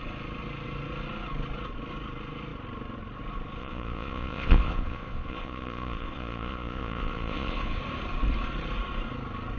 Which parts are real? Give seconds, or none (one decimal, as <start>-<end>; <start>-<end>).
0.0-3.6; 7.8-9.6